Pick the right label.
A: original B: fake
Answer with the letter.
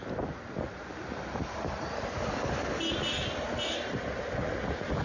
A